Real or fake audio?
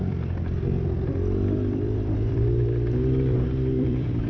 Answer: fake